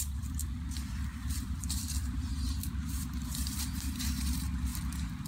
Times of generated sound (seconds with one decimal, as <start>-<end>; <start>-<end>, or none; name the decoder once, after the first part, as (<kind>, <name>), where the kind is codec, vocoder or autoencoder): 0.0-2.3 (vocoder, BigVGAN v2); 2.9-4.7